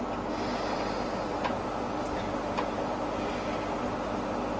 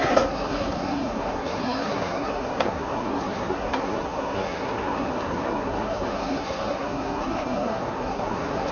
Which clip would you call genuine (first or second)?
first